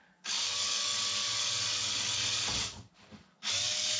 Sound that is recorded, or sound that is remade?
remade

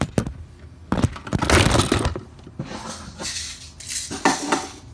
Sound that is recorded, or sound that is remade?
recorded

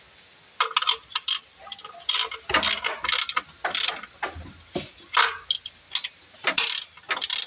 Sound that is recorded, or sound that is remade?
recorded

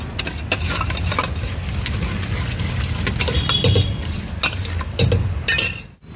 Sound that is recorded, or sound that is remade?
recorded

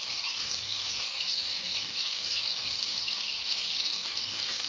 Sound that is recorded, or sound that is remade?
remade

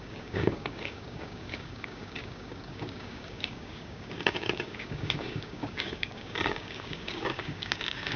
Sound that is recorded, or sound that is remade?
remade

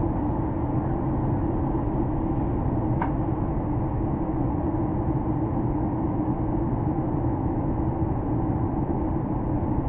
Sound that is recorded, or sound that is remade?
recorded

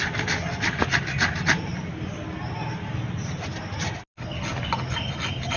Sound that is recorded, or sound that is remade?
recorded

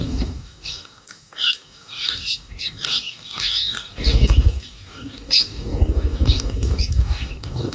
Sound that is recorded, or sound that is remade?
remade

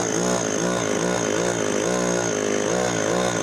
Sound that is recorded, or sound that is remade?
recorded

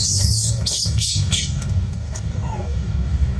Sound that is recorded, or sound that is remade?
remade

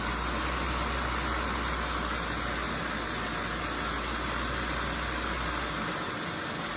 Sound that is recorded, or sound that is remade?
recorded